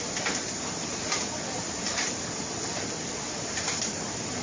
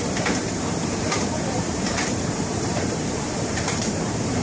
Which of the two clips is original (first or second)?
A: first